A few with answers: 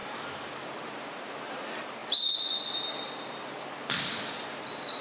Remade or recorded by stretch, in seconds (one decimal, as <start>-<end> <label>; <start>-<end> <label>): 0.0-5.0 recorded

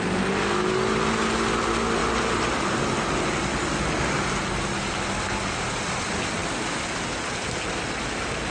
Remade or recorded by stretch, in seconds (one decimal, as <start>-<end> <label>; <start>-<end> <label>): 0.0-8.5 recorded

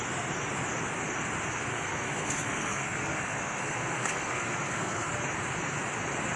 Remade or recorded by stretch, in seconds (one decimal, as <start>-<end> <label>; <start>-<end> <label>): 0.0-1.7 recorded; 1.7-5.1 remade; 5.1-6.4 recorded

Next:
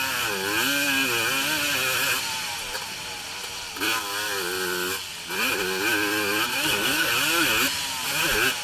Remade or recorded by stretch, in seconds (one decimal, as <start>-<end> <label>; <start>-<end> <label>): 0.0-6.5 recorded; 6.5-7.1 remade; 7.1-8.6 recorded

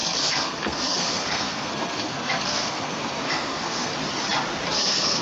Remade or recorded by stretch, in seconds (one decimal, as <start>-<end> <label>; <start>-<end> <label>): 0.0-3.9 remade; 3.9-4.7 recorded; 4.7-5.2 remade

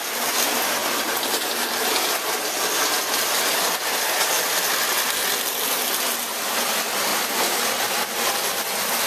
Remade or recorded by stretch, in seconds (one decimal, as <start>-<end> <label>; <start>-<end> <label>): 0.0-9.1 recorded

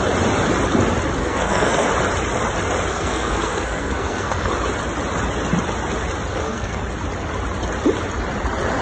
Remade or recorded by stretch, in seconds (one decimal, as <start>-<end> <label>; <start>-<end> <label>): 0.0-1.2 recorded; 1.2-1.9 remade; 1.9-2.9 recorded; 2.9-4.5 remade; 4.5-6.3 recorded; 6.3-6.8 remade; 6.8-8.8 recorded